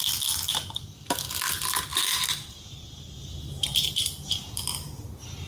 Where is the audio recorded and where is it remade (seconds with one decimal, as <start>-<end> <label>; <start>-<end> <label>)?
0.0-1.9 recorded; 1.9-5.1 remade; 5.1-5.5 recorded